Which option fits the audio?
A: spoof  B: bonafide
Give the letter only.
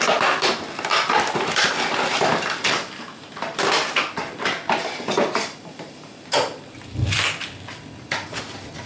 A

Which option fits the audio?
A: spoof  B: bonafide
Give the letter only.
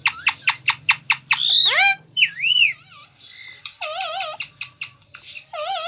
A